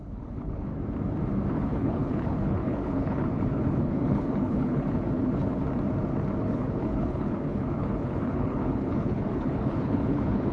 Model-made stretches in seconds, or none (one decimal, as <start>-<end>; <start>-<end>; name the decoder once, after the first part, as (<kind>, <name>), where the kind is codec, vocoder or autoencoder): 0.0-0.7 (codec, HILCodec); 1.5-5.6; 6.4-10.5